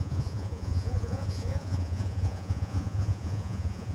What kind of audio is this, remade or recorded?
remade